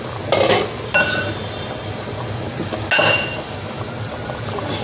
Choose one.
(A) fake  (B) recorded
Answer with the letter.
B